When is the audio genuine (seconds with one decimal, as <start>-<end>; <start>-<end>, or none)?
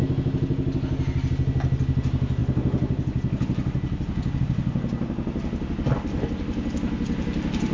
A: 0.0-7.7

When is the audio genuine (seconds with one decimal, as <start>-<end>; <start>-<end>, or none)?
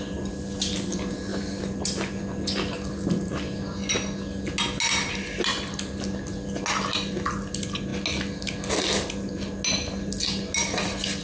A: 0.0-11.2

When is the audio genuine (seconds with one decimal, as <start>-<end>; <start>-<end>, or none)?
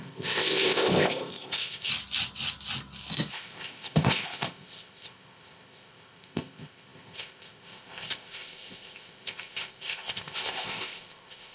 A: 1.9-3.3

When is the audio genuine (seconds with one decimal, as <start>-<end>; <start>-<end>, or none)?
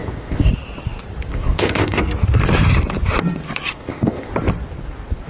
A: 0.5-1.3; 2.0-3.7; 4.3-5.3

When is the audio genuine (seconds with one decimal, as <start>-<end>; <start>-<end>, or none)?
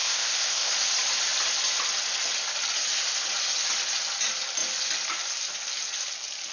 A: 0.7-6.5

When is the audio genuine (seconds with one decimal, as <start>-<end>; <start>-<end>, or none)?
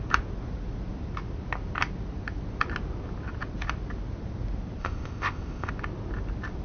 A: 0.0-4.8; 5.7-6.6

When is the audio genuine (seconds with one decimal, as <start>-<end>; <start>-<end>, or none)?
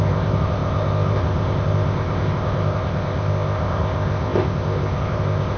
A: none